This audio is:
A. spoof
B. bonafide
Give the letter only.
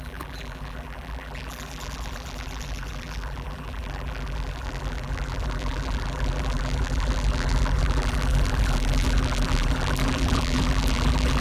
A